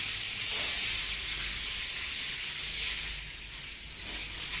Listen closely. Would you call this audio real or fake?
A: real